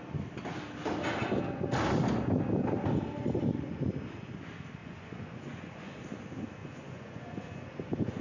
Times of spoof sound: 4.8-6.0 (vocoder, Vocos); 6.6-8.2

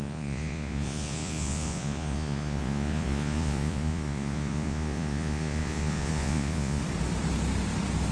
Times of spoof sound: 0.0-6.8 (vocoder, Vocos)

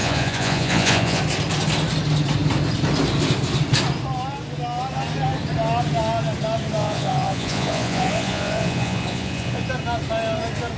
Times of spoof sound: 0.0-1.2 (vocoder, Vocos); 6.8-9.7